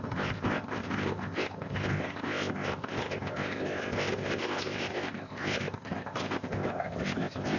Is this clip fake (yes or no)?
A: yes